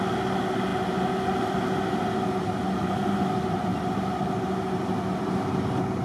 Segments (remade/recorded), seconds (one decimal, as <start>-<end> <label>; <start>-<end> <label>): 0.0-6.0 recorded